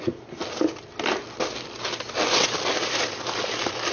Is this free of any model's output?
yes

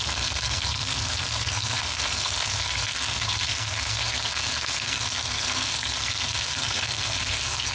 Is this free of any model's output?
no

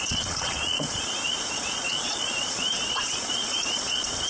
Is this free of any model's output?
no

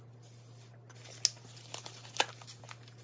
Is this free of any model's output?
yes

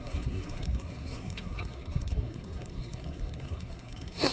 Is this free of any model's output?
no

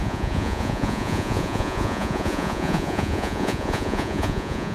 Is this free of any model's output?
no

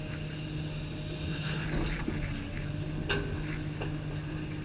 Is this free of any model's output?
yes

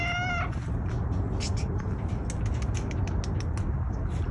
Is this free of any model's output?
yes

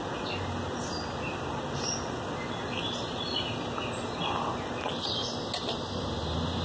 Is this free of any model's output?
yes